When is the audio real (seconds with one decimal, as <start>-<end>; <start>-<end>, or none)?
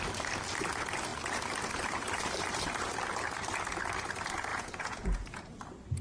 0.0-4.5; 5.4-6.0